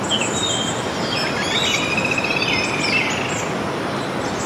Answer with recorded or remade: recorded